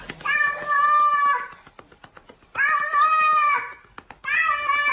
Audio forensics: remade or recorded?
recorded